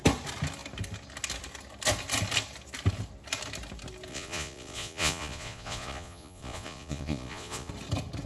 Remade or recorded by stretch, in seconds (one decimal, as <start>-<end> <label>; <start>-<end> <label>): 0.0-4.1 recorded; 4.1-7.7 remade; 7.7-8.3 recorded